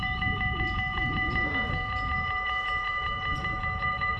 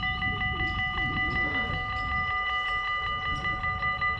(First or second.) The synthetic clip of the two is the first